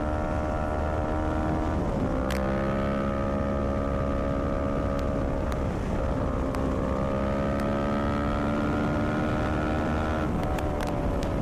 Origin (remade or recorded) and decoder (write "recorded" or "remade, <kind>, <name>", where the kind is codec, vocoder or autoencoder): recorded